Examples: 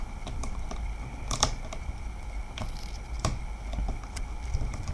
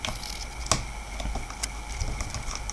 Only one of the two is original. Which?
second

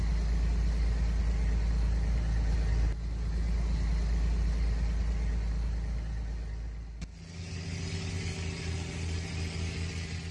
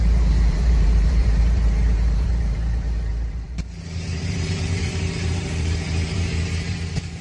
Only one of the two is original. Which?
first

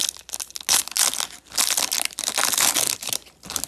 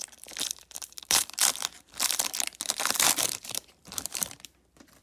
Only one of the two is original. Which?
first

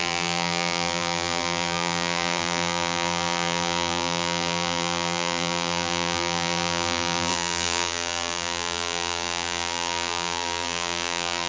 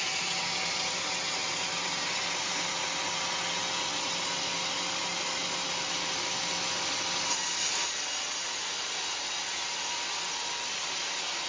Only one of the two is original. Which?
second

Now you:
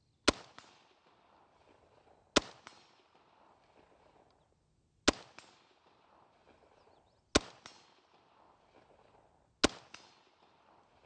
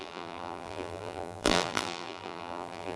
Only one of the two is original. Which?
first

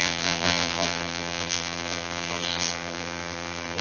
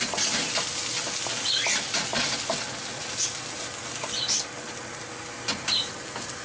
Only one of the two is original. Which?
second